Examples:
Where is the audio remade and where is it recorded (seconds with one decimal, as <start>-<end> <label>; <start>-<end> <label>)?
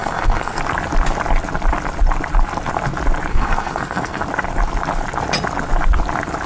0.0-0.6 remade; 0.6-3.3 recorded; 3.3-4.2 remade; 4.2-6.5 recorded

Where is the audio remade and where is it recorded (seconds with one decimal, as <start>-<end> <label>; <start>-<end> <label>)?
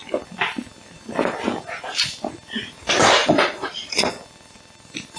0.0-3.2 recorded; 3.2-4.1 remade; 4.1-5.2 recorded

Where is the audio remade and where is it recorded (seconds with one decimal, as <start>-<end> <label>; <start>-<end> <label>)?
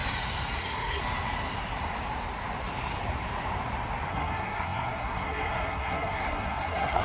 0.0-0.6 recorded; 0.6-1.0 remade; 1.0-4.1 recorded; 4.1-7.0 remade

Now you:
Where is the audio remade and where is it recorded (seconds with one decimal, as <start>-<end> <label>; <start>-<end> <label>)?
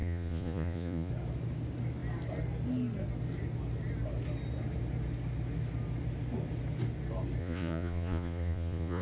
0.0-1.1 remade; 1.1-7.4 recorded; 7.4-9.0 remade